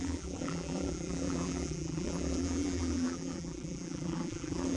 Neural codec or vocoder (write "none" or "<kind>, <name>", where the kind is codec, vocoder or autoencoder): vocoder, BigVGAN v2